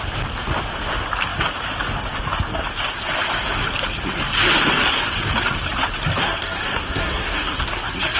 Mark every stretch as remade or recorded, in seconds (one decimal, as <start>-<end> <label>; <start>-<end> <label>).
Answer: 0.0-6.2 recorded; 6.2-7.6 remade; 7.6-8.2 recorded